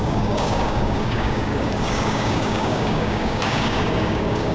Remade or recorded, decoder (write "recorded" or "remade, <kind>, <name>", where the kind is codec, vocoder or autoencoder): remade, codec, DAC